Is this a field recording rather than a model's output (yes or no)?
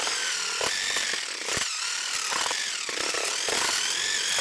yes